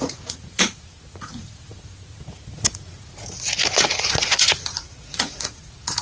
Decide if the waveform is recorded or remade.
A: remade